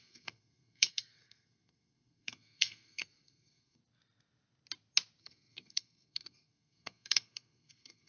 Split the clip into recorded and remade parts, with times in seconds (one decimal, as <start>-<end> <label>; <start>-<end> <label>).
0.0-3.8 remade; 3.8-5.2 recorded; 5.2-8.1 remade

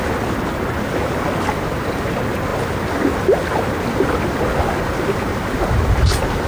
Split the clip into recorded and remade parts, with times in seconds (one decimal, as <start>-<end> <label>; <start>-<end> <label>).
0.0-6.5 recorded

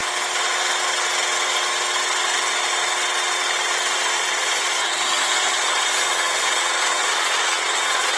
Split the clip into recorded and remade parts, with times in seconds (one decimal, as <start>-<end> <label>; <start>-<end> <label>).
0.0-4.3 recorded; 4.3-8.2 remade